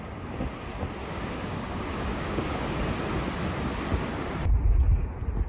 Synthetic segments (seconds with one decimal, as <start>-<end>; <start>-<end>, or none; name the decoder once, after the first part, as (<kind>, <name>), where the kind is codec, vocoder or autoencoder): 1.0-2.9 (codec, DAC)